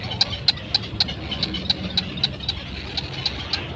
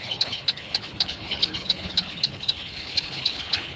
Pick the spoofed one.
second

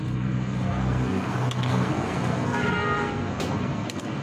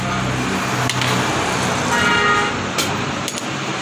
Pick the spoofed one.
first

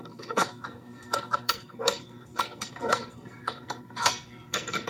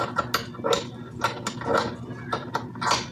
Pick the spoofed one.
first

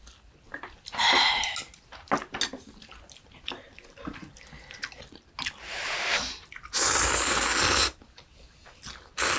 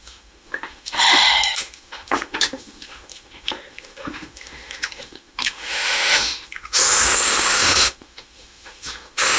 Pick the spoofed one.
second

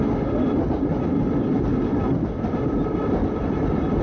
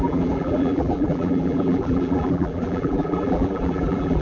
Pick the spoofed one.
second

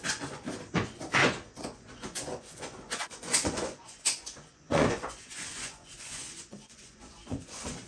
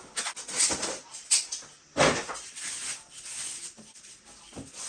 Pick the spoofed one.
first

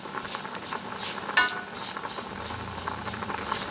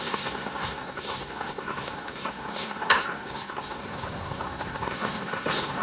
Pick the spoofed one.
second